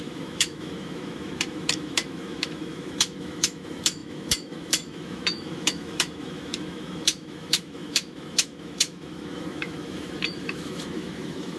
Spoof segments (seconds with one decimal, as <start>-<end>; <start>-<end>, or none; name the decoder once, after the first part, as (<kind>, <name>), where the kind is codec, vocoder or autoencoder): 0.0-11.6 (autoencoder, DAC-VAE)